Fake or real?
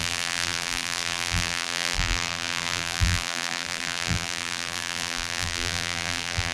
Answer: fake